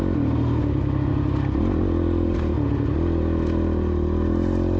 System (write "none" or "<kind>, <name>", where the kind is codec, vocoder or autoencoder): none